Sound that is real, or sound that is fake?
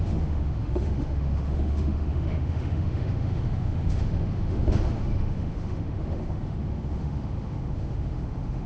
fake